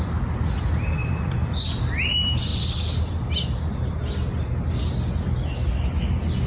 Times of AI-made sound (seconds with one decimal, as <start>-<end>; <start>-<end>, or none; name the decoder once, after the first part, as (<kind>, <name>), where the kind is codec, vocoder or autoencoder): 1.0-1.6 (vocoder, BigVGAN v2)